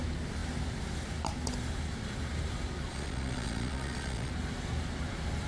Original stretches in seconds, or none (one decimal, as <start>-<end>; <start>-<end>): 0.0-2.9; 4.3-5.5